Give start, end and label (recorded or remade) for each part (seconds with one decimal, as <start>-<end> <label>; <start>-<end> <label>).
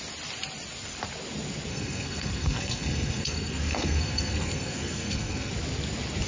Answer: 0.0-1.7 recorded; 1.7-5.5 remade; 5.5-6.3 recorded